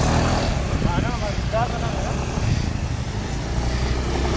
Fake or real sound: real